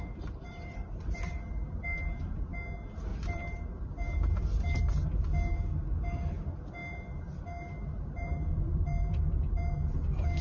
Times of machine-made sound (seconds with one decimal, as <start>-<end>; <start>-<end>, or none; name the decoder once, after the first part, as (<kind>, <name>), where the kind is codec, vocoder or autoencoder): 0.0-1.8 (vocoder, BigVGAN v2); 3.1-4.1; 6.8-9.7